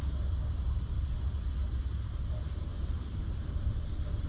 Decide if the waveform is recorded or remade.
recorded